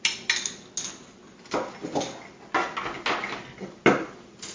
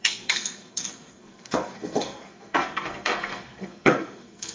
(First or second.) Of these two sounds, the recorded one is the first